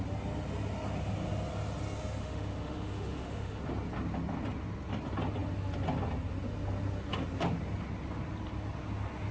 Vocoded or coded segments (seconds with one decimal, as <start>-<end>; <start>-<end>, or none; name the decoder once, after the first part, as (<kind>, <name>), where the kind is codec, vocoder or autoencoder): 2.2-3.6 (autoencoder, DAC-VAE)